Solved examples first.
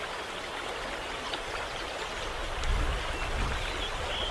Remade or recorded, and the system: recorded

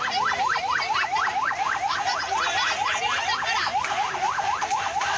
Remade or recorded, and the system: remade, vocoder, BigVGAN v2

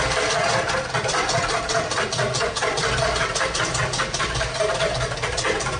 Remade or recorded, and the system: recorded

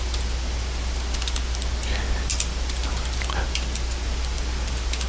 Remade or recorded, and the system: recorded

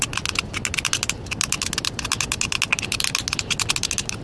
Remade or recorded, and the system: recorded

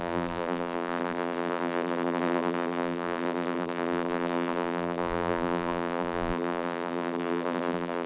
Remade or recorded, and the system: remade, vocoder, BigVGAN v2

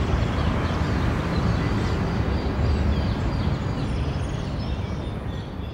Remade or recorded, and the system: recorded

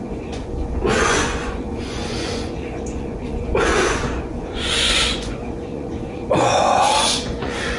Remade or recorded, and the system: remade, vocoder, Vocos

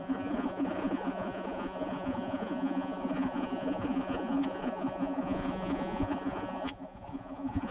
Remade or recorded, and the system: remade, vocoder, Vocos